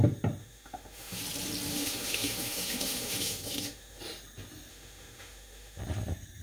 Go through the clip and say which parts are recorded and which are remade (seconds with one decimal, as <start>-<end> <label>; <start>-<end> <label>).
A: 0.0-0.4 recorded; 0.4-1.2 remade; 1.2-1.7 recorded; 1.7-4.0 remade; 4.0-4.7 recorded; 4.7-5.8 remade; 5.8-6.4 recorded